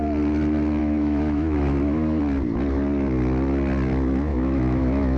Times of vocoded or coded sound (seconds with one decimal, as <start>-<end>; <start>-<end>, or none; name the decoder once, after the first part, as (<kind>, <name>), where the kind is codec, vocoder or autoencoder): 0.8-2.2 (autoencoder, DAC-VAE); 4.3-5.2